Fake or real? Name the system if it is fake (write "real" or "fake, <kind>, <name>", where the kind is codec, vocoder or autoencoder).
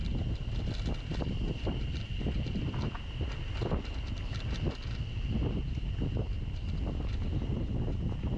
real